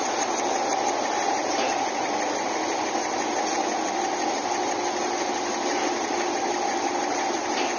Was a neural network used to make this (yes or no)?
no